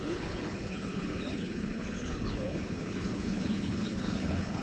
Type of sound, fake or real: fake